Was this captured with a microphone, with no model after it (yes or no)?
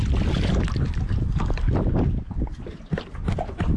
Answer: yes